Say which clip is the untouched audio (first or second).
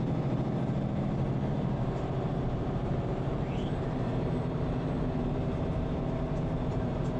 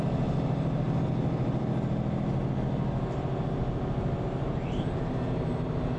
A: second